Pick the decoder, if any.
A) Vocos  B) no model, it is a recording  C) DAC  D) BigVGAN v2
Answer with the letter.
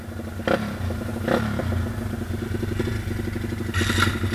B